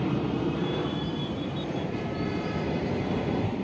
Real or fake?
fake